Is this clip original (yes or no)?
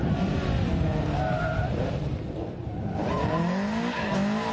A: yes